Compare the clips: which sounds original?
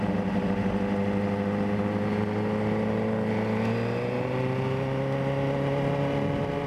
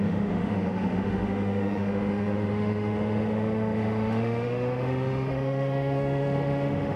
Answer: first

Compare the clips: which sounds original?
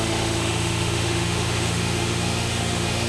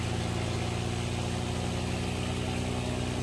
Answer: second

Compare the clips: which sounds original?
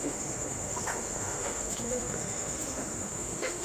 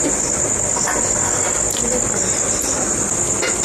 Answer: second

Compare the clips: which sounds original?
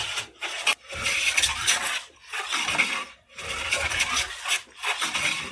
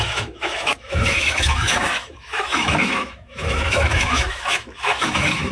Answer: first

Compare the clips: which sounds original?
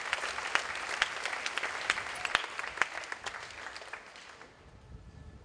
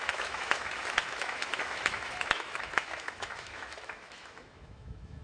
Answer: first